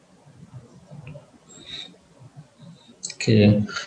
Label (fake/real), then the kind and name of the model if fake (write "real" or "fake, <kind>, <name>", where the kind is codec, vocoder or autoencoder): real